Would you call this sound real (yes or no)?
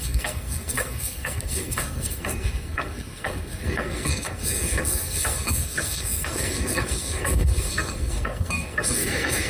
no